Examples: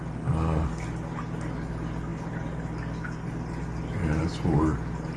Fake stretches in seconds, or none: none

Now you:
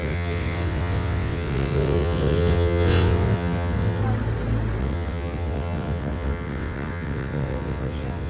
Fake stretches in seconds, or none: 0.0-4.0; 4.8-8.3

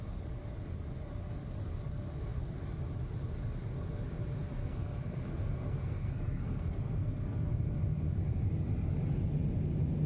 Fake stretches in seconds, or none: 4.6-7.6

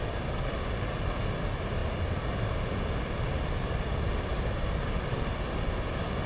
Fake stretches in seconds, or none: none

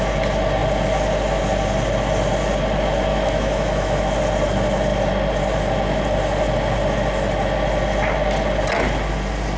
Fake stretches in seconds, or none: 3.1-4.0

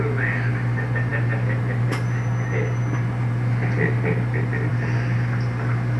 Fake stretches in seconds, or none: 1.1-4.7

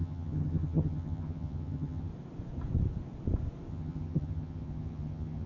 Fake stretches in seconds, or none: 0.0-2.1; 3.7-5.5